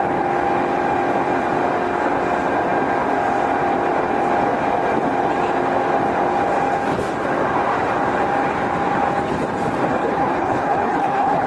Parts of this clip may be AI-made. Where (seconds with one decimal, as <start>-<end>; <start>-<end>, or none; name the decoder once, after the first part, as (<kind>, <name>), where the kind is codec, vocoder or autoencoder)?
10.0-11.5 (codec, HILCodec)

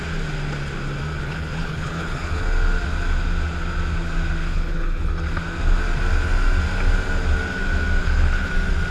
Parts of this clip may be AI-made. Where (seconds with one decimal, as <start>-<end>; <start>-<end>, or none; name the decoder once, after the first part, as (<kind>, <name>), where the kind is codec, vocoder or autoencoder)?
1.2-2.4 (codec, HILCodec); 4.4-5.1; 8.0-8.5

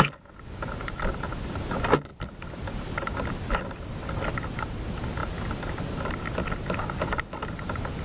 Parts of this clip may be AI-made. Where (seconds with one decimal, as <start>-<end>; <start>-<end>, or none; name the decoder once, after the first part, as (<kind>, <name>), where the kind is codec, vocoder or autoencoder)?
none